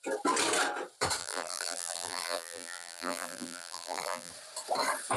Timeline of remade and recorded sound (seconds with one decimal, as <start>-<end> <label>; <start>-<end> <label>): 0.0-1.2 recorded; 1.2-4.3 remade; 4.3-5.2 recorded